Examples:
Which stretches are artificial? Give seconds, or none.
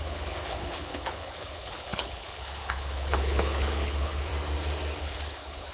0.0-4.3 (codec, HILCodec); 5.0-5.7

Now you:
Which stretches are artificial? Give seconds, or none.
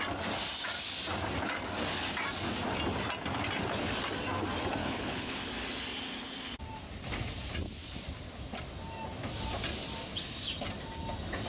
4.8-5.4 (codec, HILCodec)